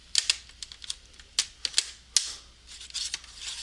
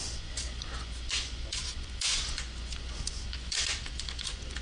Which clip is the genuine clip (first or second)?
first